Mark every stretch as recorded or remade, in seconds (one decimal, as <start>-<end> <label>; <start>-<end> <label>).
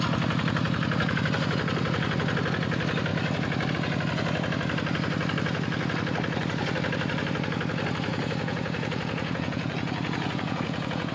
0.0-8.1 recorded; 8.1-11.1 remade